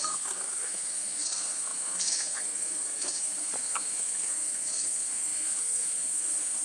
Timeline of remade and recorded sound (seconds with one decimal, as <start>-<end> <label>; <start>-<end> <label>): 0.0-6.6 remade